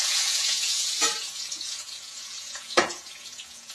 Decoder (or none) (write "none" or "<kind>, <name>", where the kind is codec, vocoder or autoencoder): vocoder, Vocos